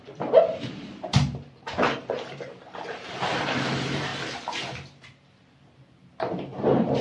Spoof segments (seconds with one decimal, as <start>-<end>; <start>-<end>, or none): 0.0-4.1; 5.5-7.0